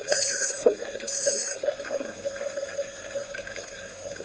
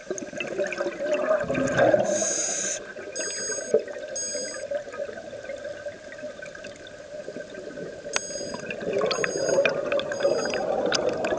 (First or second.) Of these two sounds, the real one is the second